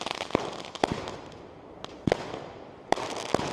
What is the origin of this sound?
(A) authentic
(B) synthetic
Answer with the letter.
A